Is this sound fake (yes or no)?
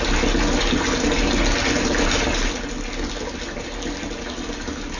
no